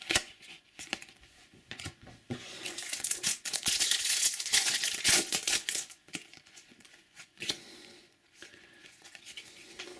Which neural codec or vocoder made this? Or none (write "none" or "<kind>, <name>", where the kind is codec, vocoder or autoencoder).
vocoder, Vocos